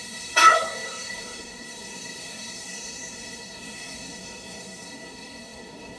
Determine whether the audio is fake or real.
fake